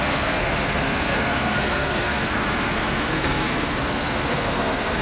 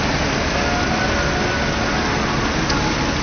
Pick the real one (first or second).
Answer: second